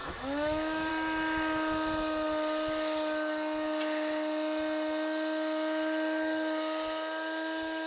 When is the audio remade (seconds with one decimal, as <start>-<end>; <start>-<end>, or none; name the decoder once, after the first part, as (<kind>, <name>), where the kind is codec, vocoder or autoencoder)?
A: 0.0-0.9 (autoencoder, DAC-VAE)